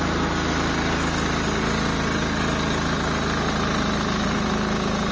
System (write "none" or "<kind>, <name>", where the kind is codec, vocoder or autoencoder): none